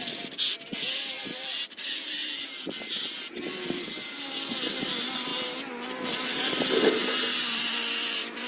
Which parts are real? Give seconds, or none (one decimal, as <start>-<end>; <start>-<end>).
0.0-8.5